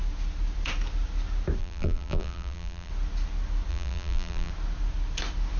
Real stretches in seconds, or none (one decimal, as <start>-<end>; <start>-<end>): 0.0-1.6; 2.9-3.7; 4.5-5.6